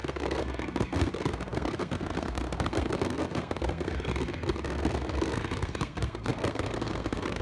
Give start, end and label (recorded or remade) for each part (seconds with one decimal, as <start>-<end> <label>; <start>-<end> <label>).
0.0-7.4 remade